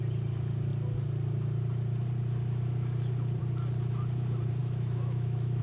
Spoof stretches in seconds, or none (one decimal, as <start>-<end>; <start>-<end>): 4.6-5.6